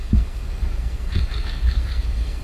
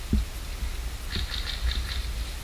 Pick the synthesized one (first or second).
first